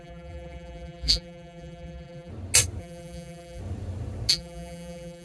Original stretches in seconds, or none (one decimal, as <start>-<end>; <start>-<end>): 2.3-2.8; 3.6-4.3